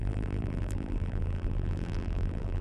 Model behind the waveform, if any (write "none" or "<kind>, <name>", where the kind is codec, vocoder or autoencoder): vocoder, BigVGAN v2